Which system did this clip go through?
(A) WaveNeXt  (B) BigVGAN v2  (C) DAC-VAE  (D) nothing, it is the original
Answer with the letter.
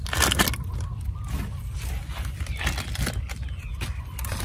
D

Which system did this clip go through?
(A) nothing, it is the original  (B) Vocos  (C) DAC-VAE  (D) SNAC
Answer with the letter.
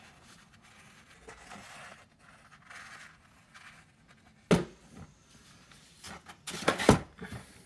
A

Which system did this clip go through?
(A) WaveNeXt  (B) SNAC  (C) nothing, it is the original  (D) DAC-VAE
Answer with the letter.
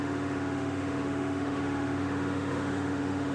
D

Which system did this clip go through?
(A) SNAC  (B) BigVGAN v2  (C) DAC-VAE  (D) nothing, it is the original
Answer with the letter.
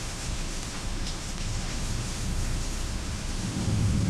C